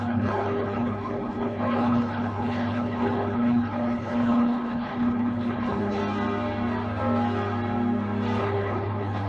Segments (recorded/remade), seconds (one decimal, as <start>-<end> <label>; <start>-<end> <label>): 0.0-6.0 remade; 6.0-8.4 recorded; 8.4-9.3 remade